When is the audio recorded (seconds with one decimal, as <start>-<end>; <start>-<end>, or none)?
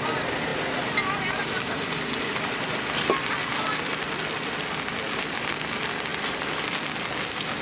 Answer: 0.0-7.6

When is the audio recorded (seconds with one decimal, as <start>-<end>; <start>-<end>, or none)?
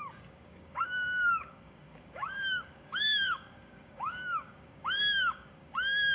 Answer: none